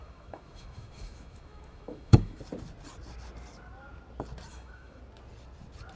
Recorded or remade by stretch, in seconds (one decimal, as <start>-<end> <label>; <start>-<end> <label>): 0.0-2.4 remade; 2.4-4.5 recorded; 4.5-5.0 remade; 5.0-6.0 recorded